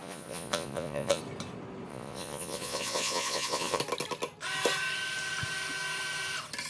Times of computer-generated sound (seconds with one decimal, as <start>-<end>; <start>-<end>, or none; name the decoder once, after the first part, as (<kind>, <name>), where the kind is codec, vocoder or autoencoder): 0.0-1.2 (vocoder, Vocos); 1.9-3.8

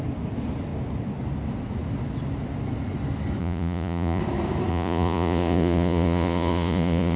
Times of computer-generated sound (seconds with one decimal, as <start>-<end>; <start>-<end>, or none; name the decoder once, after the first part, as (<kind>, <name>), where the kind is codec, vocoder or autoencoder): 3.4-4.2 (vocoder, Vocos); 4.7-7.2

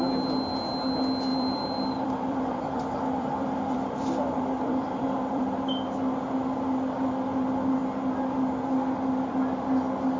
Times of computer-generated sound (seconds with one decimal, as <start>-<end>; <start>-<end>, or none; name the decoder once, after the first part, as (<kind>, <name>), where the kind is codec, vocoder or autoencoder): 1.3-5.4 (vocoder, BigVGAN v2)

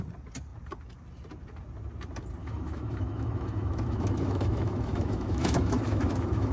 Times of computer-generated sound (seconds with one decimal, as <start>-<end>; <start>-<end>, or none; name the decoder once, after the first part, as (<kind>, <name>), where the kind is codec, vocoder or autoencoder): 2.4-6.5 (autoencoder, DAC-VAE)

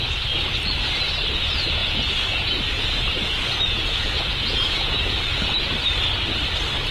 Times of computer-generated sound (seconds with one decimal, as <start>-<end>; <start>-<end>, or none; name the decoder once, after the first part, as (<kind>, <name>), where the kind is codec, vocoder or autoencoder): 1.8-5.4 (vocoder, Vocos)